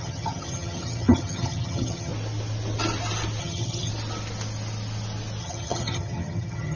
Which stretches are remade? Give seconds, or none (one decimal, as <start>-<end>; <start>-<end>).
0.0-2.1; 3.4-3.9; 5.4-6.8